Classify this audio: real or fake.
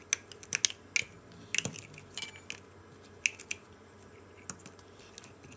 real